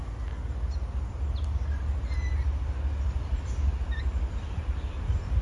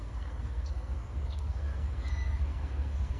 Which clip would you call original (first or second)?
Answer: first